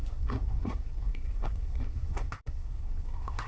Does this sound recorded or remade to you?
remade